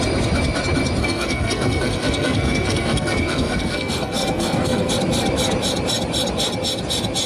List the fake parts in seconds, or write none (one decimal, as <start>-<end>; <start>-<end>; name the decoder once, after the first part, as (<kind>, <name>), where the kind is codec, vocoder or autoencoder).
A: 1.0-4.9 (codec, SNAC)

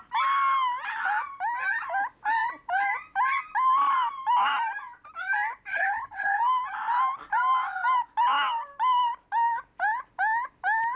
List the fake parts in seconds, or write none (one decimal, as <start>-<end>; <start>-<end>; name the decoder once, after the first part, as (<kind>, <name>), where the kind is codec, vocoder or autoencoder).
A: 5.7-6.4 (codec, HILCodec)

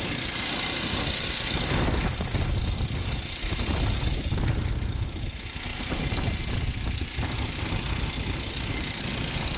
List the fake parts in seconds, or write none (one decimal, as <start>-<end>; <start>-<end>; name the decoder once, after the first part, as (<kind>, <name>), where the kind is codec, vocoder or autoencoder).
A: none

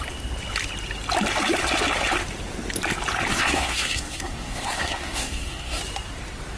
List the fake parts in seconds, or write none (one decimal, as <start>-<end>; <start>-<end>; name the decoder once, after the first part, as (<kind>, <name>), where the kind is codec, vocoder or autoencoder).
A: 3.3-5.8 (codec, SNAC)